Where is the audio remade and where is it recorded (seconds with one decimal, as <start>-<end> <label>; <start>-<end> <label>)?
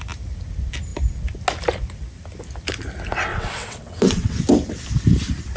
0.0-3.3 recorded; 3.3-4.4 remade; 4.4-5.6 recorded